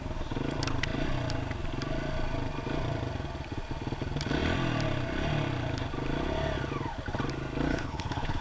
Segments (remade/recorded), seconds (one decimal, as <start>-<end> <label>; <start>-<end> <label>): 0.0-7.7 recorded; 7.7-8.4 remade